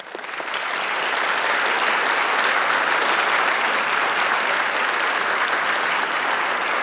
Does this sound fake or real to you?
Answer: real